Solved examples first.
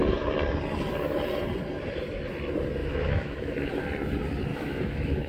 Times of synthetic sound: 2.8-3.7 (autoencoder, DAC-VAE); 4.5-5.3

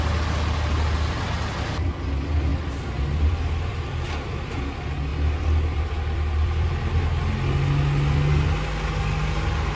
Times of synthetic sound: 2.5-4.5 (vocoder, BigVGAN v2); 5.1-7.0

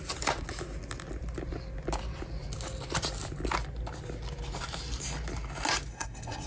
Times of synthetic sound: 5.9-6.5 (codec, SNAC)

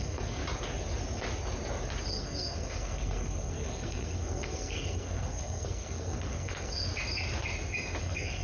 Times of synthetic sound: 0.0-0.4 (codec, SNAC); 2.1-6.9; 8.0-8.4